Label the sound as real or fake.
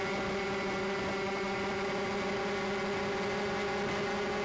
real